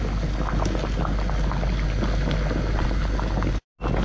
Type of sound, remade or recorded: recorded